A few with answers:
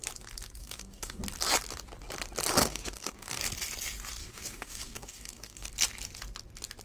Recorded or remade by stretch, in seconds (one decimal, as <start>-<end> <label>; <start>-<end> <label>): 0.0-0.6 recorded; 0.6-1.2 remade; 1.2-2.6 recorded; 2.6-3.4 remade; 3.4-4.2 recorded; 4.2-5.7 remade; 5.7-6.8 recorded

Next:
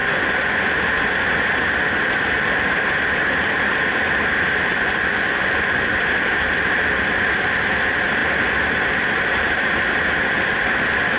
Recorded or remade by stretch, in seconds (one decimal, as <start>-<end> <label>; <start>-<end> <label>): 0.0-0.6 remade; 0.6-4.7 recorded; 4.7-5.9 remade; 5.9-11.2 recorded

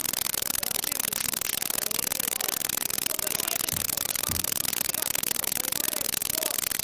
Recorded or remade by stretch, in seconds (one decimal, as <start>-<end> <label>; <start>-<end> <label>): 0.0-6.8 recorded

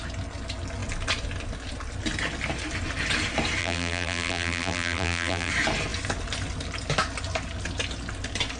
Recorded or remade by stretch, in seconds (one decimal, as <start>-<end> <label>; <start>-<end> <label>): 0.0-3.6 recorded; 3.6-5.5 remade; 5.5-8.6 recorded